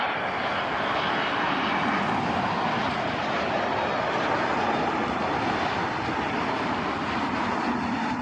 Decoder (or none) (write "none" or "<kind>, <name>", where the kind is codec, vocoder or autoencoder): none